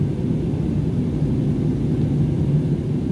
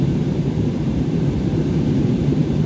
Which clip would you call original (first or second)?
first